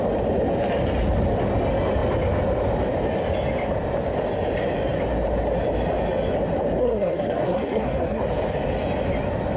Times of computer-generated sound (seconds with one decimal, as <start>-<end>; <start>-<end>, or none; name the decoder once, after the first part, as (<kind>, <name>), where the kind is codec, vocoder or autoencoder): 6.8-8.2 (codec, SNAC)